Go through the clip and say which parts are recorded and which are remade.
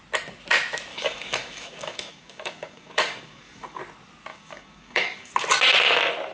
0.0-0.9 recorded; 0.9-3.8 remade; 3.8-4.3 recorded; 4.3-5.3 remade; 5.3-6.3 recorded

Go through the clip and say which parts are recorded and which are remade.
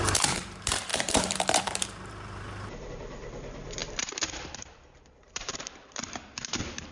0.0-6.9 remade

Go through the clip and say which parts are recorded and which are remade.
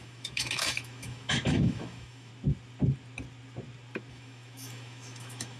0.0-2.3 remade; 2.3-4.1 recorded; 4.1-5.6 remade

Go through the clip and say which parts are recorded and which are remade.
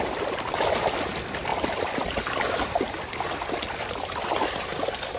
0.0-5.2 recorded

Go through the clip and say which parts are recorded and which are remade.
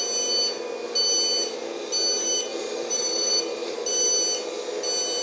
0.0-2.5 recorded; 2.5-3.8 remade; 3.8-5.2 recorded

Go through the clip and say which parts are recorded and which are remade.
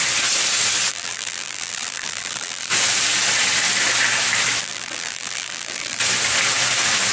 0.0-0.9 recorded; 0.9-2.7 remade; 2.7-4.6 recorded; 4.6-6.0 remade; 6.0-7.1 recorded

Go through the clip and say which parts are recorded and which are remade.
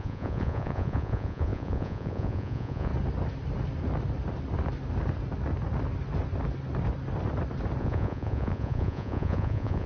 0.0-2.9 remade; 2.9-7.8 recorded; 7.8-9.9 remade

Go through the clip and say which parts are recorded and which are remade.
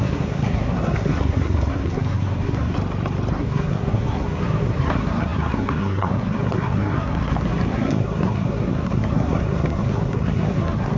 0.0-2.8 remade; 2.8-3.3 recorded; 3.3-11.0 remade